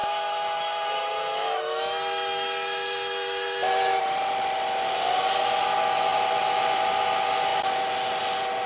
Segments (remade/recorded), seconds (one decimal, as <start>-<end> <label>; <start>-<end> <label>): 0.0-4.0 remade; 4.0-8.7 recorded